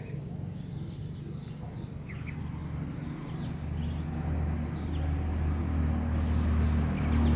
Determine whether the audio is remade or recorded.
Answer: recorded